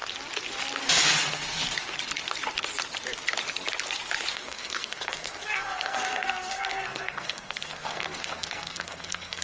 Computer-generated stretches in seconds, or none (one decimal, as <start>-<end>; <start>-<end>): 4.3-9.4